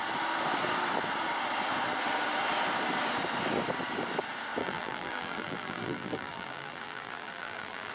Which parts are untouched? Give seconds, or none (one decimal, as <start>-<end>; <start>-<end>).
0.0-4.6